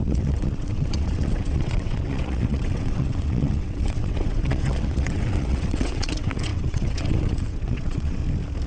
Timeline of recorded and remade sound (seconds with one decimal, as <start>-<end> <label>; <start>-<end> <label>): 0.0-8.2 remade; 8.2-8.7 recorded